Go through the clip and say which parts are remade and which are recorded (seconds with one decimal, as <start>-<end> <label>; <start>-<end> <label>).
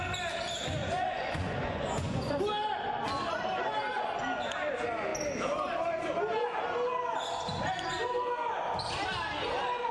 0.0-0.8 recorded; 0.8-2.4 remade; 2.4-9.9 recorded